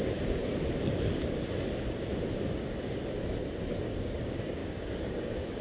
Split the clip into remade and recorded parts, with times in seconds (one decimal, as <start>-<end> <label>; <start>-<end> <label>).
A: 0.0-0.4 remade; 0.4-3.8 recorded; 3.8-5.6 remade